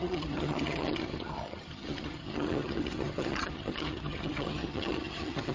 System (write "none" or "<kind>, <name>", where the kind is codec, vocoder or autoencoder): vocoder, HiFi-GAN